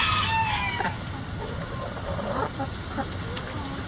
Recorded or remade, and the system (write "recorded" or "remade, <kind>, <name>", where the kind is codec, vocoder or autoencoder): recorded